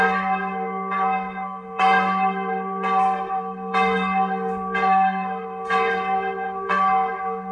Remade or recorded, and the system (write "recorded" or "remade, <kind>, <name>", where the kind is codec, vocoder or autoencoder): remade, codec, SNAC